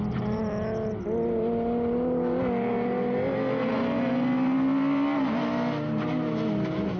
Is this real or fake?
real